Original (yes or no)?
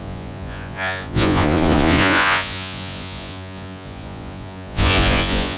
no